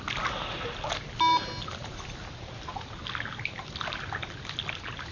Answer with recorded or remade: recorded